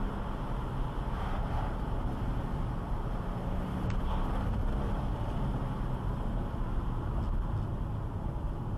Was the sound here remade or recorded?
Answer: recorded